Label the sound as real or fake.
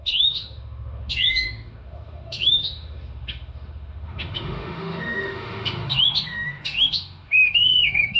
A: fake